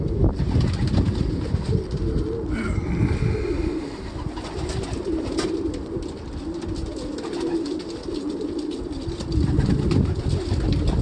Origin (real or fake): real